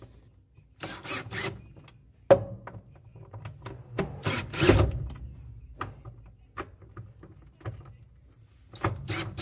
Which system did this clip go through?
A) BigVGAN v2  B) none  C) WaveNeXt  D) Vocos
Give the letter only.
B